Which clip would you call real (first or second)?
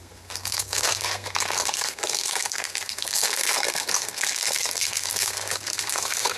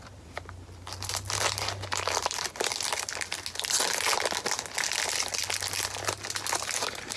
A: second